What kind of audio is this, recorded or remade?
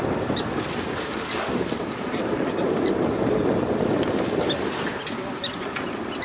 recorded